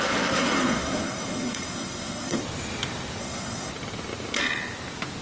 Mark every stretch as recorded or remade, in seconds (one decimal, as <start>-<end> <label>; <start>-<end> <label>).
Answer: 0.0-2.4 remade; 2.4-3.2 recorded; 3.2-3.7 remade; 3.7-5.2 recorded